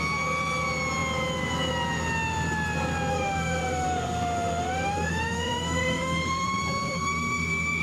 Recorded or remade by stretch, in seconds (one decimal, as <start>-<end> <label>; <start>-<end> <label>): 0.0-3.1 recorded; 3.1-7.8 remade